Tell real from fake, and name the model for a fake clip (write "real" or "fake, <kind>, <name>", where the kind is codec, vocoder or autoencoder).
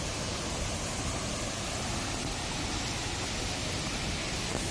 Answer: real